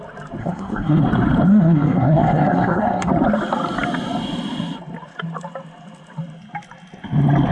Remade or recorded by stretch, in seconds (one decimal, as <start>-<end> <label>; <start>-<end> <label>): 0.0-0.4 recorded; 0.4-1.0 remade; 1.0-1.5 recorded; 1.5-3.1 remade; 3.1-7.5 recorded